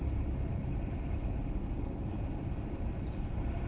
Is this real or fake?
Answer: real